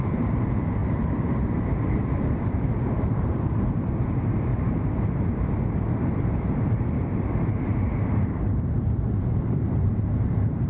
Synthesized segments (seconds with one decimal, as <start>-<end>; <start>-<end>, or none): 0.0-4.5; 6.7-10.7